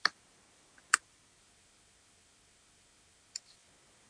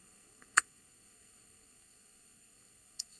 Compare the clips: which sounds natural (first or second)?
first